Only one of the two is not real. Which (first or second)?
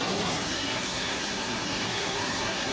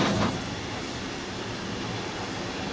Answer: first